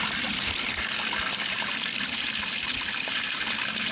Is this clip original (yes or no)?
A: yes